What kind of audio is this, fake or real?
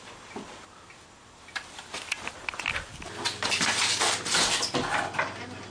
real